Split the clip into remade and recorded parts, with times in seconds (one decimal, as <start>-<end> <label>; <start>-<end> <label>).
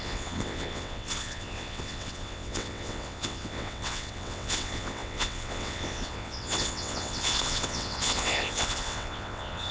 0.0-9.7 remade